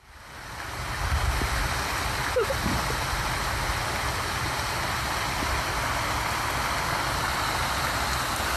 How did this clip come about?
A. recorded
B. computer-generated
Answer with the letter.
A